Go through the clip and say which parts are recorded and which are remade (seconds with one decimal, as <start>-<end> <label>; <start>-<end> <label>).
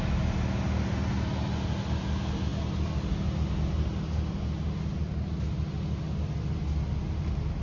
0.0-7.6 recorded